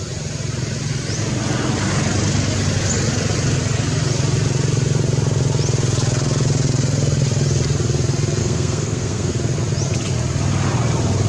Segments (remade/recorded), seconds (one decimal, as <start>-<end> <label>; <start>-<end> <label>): 0.0-8.4 recorded; 8.4-9.3 remade; 9.3-11.3 recorded